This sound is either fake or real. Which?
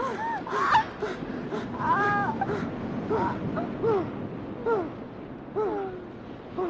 real